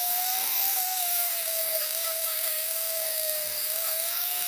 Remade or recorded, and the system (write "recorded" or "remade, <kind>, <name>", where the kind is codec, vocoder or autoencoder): remade, codec, DAC